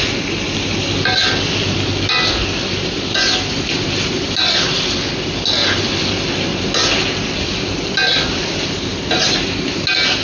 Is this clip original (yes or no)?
yes